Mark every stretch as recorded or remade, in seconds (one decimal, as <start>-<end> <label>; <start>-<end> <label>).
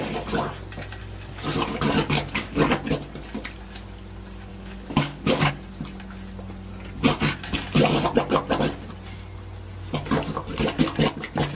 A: 0.0-1.0 recorded; 1.0-2.6 remade; 2.6-4.5 recorded; 4.5-5.5 remade; 5.5-11.5 recorded